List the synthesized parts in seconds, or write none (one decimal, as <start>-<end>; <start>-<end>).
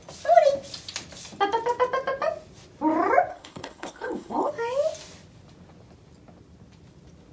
3.3-4.5